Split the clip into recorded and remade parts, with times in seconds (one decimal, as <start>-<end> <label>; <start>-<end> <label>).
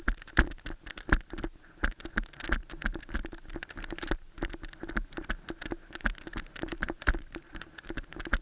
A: 0.0-6.7 recorded; 6.7-7.9 remade; 7.9-8.4 recorded